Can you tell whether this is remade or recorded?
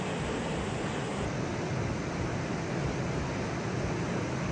recorded